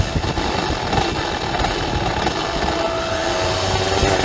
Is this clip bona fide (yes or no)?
yes